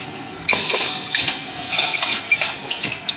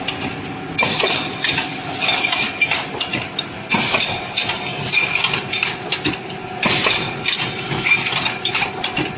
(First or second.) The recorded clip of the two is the second